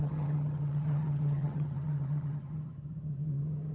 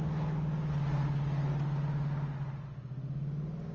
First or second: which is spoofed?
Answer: first